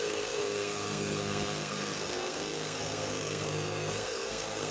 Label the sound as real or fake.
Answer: fake